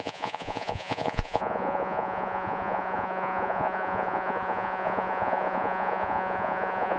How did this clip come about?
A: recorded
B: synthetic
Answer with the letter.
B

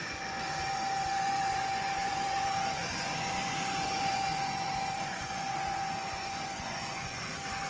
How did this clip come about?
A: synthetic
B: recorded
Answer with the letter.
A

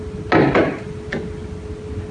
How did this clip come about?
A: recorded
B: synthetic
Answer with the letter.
A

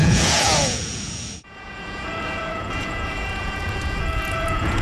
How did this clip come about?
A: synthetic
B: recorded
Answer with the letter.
A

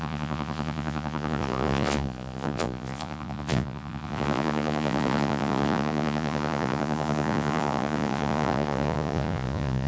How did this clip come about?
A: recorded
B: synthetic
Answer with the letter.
B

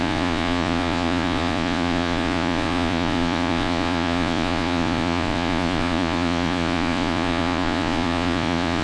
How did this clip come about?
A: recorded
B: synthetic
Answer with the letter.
B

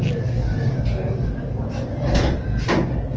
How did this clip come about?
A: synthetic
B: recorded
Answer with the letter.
B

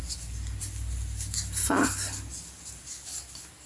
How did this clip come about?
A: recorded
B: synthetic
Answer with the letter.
A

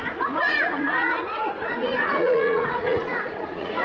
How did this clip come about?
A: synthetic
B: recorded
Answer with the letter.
A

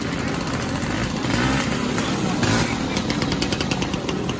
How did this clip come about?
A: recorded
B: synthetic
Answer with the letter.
A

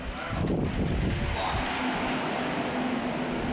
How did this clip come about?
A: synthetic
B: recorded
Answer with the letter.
B